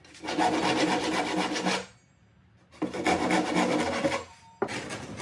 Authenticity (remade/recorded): recorded